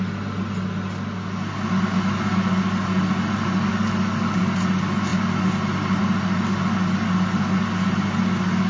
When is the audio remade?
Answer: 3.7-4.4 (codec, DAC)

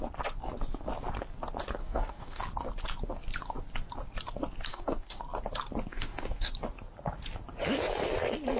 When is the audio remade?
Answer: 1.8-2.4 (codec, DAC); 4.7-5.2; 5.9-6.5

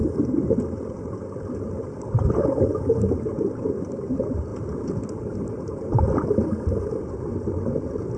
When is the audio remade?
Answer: 0.0-2.3 (vocoder, BigVGAN v2); 4.5-6.0

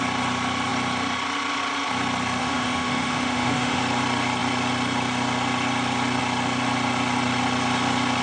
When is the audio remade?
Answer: 2.4-3.8 (autoencoder, DAC-VAE)

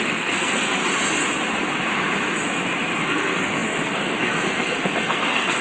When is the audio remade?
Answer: 0.0-0.8 (codec, SNAC); 3.0-5.6

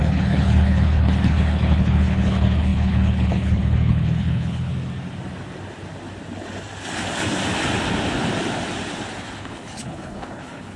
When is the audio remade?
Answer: 0.0-4.7 (codec, HILCodec); 9.4-10.8

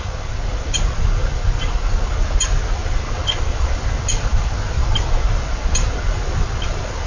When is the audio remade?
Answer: none

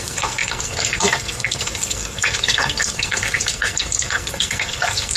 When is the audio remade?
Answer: 0.0-5.2 (codec, SNAC)